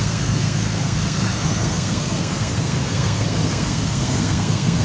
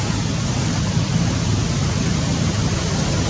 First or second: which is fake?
first